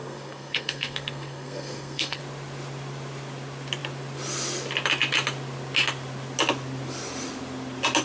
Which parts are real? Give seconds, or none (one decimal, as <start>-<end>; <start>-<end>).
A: 2.2-8.0